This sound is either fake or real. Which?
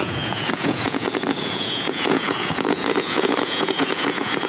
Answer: fake